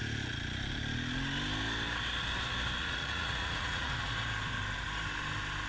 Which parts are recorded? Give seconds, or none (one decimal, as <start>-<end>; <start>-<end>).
0.0-2.8; 4.1-5.7